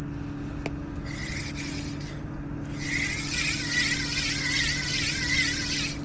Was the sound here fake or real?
real